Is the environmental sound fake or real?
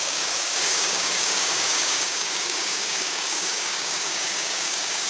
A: fake